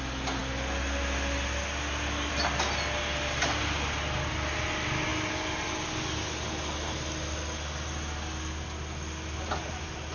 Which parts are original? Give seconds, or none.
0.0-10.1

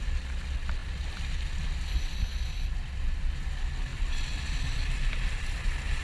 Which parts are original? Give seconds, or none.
0.0-6.0

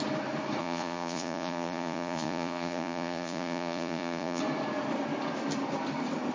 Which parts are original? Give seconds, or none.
0.0-0.6; 4.4-6.3

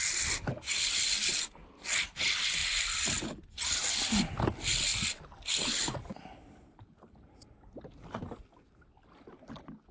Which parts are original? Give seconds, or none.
0.0-9.9

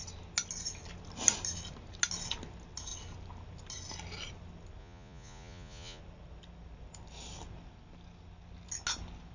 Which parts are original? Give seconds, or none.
0.0-4.8; 6.0-9.3